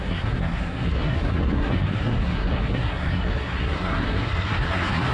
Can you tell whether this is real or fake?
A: fake